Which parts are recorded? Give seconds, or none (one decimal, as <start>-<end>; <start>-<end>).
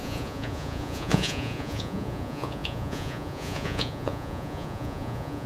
none